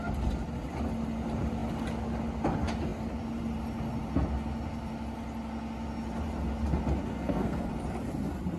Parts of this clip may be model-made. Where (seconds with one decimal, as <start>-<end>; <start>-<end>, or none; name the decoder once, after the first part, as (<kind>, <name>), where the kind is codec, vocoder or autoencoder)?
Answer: 7.1-7.7 (codec, SNAC)